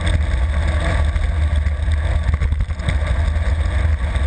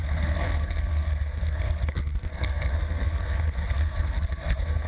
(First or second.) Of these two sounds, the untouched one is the first